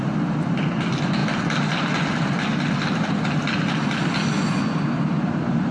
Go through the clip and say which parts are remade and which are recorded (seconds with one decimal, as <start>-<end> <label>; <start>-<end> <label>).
0.0-5.7 recorded